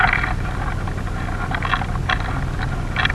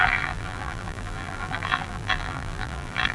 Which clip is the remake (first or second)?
second